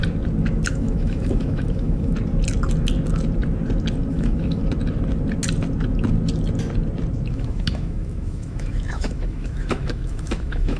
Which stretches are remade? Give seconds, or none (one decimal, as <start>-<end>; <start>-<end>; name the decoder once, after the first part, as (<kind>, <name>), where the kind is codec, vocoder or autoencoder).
0.7-2.1 (autoencoder, DAC-VAE); 4.1-4.6; 7.3-10.8